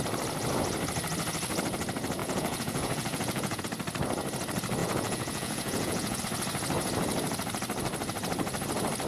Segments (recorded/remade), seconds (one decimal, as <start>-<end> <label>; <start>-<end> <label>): 0.0-2.2 recorded; 2.2-3.6 remade; 3.6-4.8 recorded; 4.8-6.2 remade; 6.2-9.1 recorded

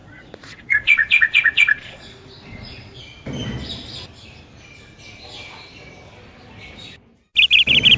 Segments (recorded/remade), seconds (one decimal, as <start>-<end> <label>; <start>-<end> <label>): 0.0-3.0 remade; 3.0-8.0 recorded

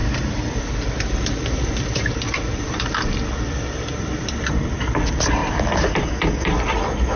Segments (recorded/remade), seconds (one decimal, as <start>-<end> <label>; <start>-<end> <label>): 0.0-7.2 remade

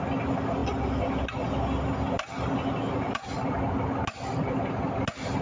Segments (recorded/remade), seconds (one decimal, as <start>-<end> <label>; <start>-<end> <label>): 0.0-5.4 recorded

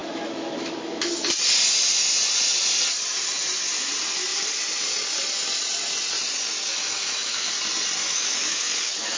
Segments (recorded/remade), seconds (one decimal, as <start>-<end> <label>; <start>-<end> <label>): 0.0-1.0 remade; 1.0-6.7 recorded; 6.7-7.5 remade; 7.5-8.0 recorded; 8.0-9.2 remade